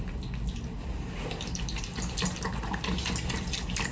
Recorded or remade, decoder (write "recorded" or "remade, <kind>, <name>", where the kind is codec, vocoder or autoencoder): recorded